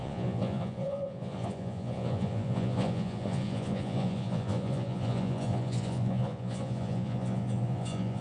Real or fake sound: fake